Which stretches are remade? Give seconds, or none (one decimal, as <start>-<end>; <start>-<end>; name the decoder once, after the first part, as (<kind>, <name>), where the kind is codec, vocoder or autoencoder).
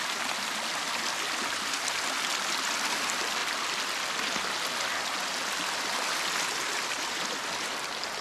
none